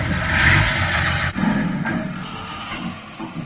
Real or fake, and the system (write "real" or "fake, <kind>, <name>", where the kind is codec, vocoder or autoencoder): real